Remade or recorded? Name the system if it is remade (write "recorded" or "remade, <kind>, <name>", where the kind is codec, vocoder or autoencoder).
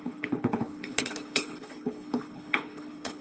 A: remade, codec, HILCodec